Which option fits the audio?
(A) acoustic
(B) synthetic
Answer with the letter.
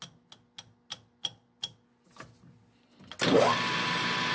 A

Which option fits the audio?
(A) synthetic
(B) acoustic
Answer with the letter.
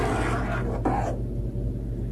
B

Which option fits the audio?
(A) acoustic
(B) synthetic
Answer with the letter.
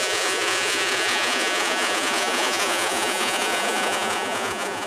B